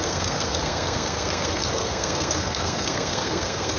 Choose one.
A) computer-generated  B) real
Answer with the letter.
A